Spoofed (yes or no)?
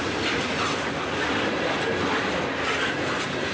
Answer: no